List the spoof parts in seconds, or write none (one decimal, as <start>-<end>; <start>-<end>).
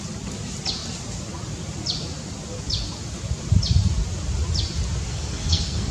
5.1-5.9